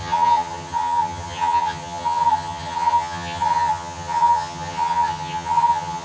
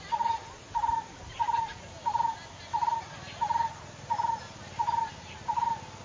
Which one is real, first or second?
second